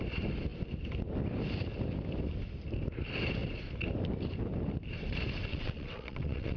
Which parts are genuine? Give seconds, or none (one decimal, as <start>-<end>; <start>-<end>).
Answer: 0.0-5.5